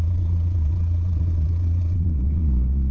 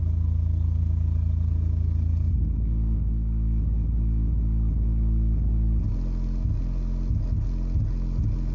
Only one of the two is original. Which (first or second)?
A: second